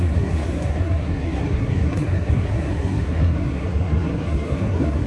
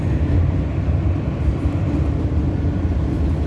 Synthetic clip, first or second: first